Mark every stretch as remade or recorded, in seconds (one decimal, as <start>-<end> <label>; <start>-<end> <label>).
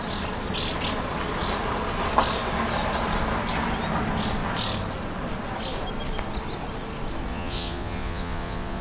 0.0-7.3 recorded; 7.3-8.8 remade